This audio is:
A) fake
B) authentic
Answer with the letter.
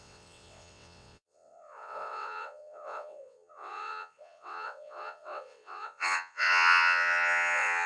A